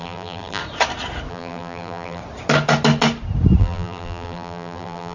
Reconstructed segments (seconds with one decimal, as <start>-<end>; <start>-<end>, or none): 0.0-0.6; 1.3-2.2; 3.6-5.1